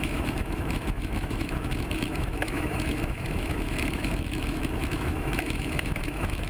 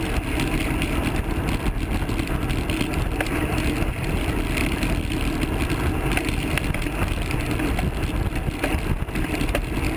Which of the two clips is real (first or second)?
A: second